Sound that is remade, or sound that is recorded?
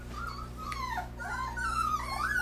recorded